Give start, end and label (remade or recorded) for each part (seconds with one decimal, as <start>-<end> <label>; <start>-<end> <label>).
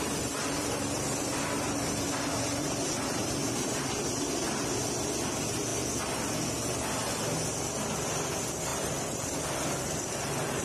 0.0-8.7 recorded; 8.7-9.4 remade; 9.4-10.6 recorded